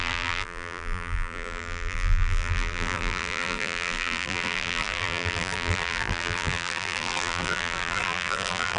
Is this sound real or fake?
fake